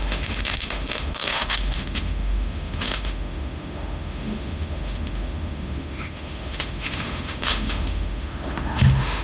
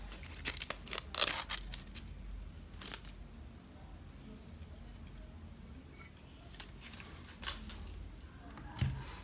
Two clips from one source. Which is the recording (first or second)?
second